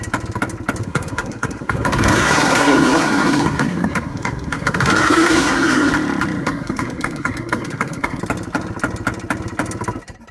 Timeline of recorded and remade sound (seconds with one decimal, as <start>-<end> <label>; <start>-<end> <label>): 0.0-0.8 recorded; 0.8-5.9 remade; 5.9-6.4 recorded; 6.4-8.2 remade; 8.2-10.3 recorded